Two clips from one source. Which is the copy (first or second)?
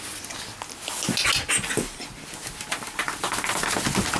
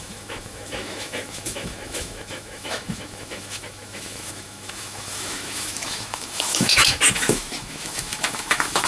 second